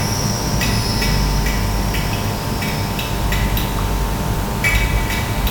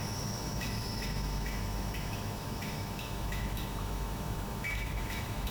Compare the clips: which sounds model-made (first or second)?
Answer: second